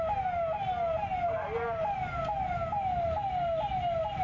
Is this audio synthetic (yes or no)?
no